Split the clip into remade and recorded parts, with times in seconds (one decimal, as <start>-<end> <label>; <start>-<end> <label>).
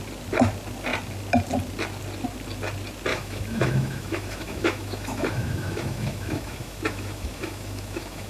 0.0-3.1 recorded; 3.1-8.3 remade